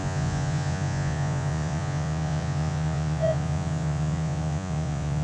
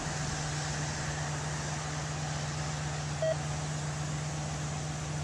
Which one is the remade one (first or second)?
first